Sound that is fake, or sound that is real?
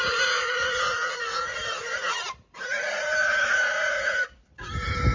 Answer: real